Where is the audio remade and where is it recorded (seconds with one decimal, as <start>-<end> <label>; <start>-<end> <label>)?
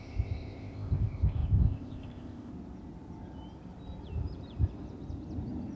0.0-2.5 remade; 2.5-5.8 recorded